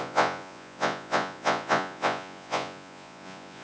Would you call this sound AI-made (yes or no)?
yes